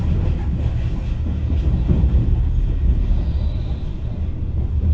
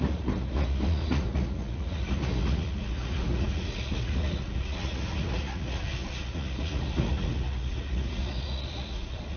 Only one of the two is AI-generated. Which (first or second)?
second